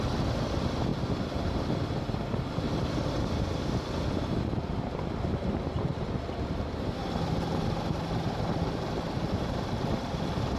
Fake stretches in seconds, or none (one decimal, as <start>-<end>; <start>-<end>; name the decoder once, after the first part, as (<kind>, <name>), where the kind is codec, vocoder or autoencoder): none